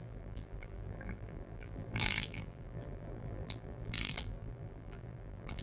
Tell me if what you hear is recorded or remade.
remade